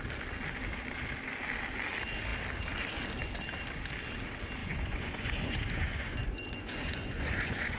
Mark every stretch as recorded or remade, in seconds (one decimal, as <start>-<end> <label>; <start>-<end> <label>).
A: 0.0-4.6 recorded; 4.6-7.8 remade